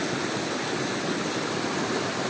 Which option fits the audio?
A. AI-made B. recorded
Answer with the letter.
B